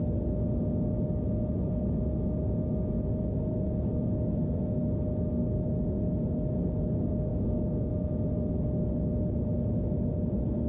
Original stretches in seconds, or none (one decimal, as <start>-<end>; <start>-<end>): 0.0-7.3; 7.9-10.7